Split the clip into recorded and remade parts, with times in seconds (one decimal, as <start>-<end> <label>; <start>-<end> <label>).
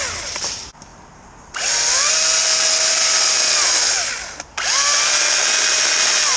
0.0-6.4 recorded